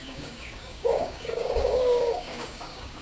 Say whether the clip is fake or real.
fake